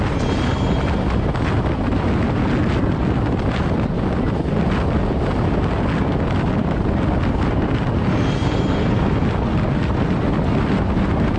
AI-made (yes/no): no